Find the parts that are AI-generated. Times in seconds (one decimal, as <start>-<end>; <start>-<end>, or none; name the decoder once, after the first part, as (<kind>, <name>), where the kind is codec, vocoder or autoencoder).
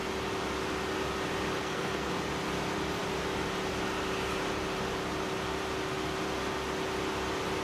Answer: 1.6-2.1 (codec, SNAC)